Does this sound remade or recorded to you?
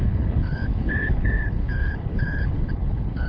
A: remade